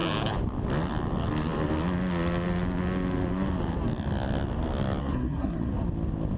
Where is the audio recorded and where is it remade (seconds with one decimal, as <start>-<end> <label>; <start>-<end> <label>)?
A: 0.0-5.0 recorded; 5.0-5.7 remade; 5.7-6.4 recorded